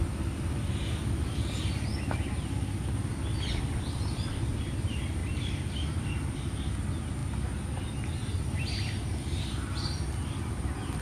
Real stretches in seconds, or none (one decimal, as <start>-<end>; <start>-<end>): 0.0-5.2; 6.0-11.0